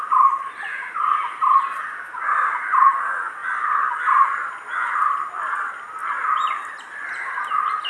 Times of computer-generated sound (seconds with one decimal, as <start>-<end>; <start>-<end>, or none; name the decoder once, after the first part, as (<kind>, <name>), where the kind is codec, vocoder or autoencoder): none